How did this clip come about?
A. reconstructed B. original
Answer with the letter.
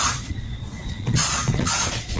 A